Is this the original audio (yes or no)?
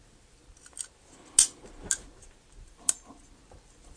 yes